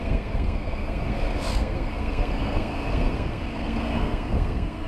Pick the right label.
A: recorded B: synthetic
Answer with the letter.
B